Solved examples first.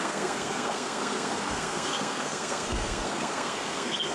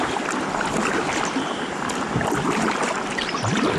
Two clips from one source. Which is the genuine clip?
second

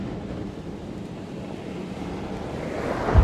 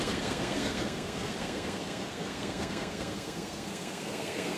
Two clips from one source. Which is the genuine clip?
first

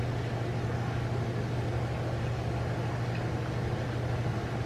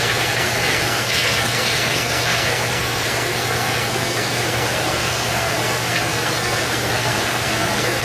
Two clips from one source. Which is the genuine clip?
first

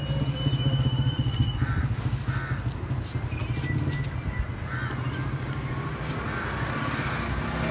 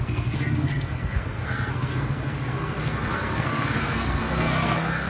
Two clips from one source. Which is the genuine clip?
first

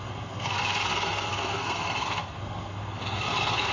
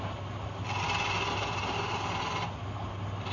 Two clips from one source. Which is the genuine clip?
second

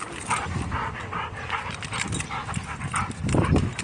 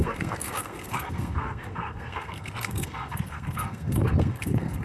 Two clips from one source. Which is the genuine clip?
first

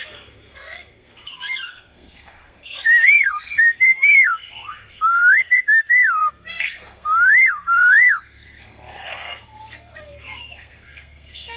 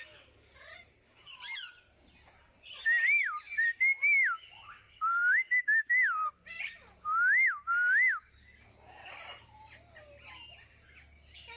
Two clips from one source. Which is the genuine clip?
second